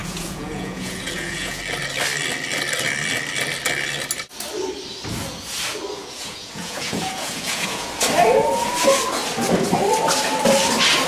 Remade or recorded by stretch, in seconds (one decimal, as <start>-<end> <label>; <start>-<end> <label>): 0.0-1.6 remade; 1.6-6.0 recorded; 6.0-7.9 remade; 7.9-11.1 recorded